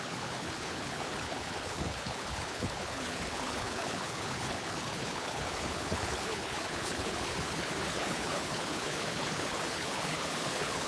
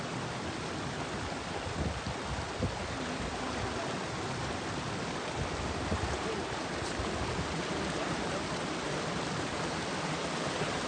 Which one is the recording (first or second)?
second